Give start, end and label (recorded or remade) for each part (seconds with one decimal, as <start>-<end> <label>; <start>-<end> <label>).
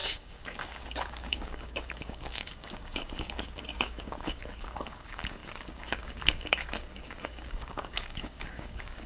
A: 0.0-9.1 remade